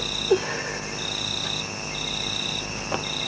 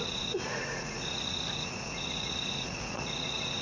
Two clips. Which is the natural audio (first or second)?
first